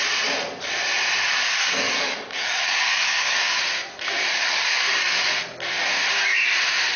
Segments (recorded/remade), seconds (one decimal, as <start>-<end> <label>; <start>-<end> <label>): 0.0-1.3 recorded; 1.3-3.6 remade; 3.6-4.3 recorded; 4.3-5.3 remade; 5.3-7.0 recorded